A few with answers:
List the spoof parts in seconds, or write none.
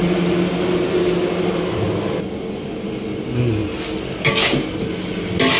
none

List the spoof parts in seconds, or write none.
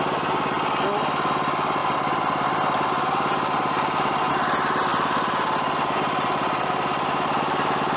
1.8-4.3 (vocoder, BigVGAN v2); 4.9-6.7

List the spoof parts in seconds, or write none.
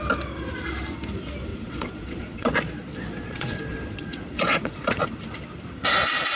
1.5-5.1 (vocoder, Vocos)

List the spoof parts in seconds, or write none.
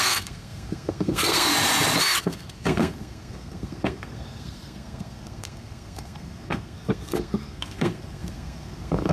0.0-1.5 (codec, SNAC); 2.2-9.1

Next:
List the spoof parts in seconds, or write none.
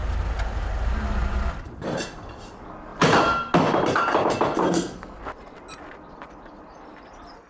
4.6-5.2 (codec, SNAC)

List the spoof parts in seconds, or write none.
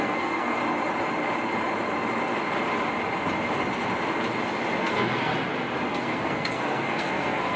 0.0-0.6 (codec, SNAC); 4.8-5.3; 5.9-7.6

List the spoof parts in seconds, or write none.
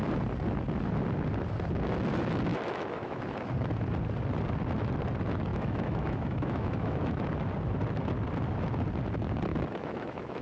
2.5-3.2 (autoencoder, DAC-VAE); 5.5-7.2; 9.5-10.4